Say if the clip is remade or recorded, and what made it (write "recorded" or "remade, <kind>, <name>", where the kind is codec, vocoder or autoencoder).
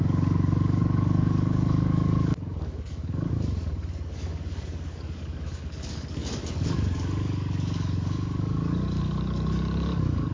remade, codec, DAC